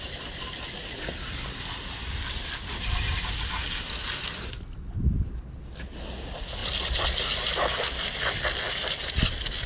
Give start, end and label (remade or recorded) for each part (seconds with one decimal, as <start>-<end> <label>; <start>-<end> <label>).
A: 0.0-9.7 recorded